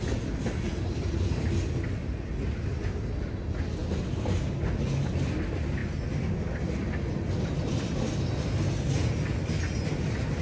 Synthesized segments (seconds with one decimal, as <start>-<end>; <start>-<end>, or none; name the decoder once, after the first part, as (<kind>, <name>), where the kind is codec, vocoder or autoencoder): none